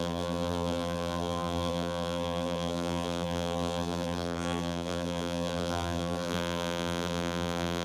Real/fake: fake